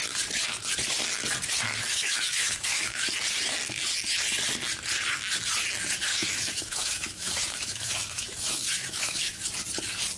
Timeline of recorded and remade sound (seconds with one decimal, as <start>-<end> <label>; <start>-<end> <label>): 0.0-1.9 recorded; 1.9-3.1 remade; 3.1-6.1 recorded; 6.1-9.4 remade; 9.4-10.2 recorded